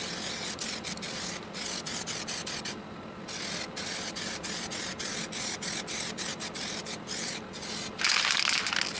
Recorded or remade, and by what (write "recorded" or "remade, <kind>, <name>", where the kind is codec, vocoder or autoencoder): recorded